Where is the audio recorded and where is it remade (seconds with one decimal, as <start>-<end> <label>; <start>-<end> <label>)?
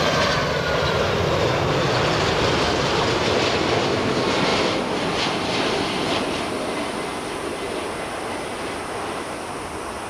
0.0-4.5 recorded; 4.5-6.5 remade; 6.5-10.1 recorded